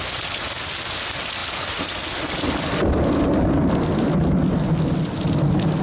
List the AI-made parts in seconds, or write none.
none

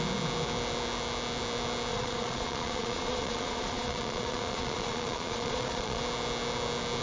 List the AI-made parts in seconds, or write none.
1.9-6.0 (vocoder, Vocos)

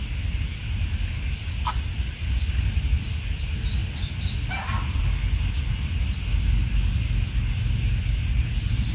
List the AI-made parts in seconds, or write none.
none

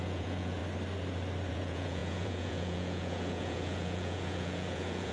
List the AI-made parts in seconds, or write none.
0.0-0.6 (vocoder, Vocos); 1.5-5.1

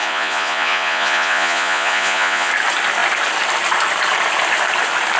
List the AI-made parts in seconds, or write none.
0.0-2.5 (vocoder, Vocos)

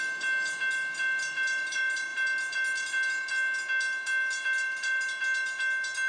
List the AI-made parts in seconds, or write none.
none

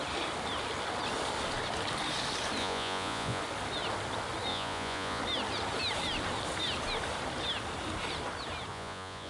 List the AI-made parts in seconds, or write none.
2.6-3.4 (vocoder, Vocos); 4.5-5.2; 8.7-9.3

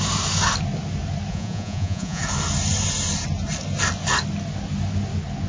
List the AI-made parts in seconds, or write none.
1.3-2.2 (vocoder, Vocos)